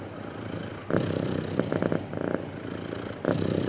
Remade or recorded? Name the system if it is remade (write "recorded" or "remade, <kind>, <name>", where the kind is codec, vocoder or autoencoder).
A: recorded